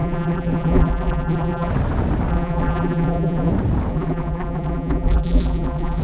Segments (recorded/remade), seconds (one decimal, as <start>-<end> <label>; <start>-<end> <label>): 0.0-1.7 remade; 1.7-2.3 recorded; 2.3-3.5 remade; 3.5-3.9 recorded; 3.9-6.0 remade